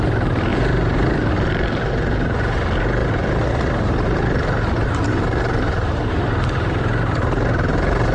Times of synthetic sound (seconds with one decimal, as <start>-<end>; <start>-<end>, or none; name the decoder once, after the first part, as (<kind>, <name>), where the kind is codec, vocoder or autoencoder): 0.5-1.9 (vocoder, BigVGAN v2); 3.0-6.9